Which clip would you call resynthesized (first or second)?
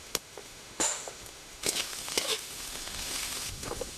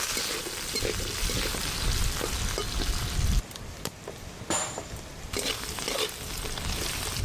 first